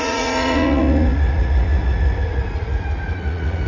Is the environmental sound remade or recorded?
remade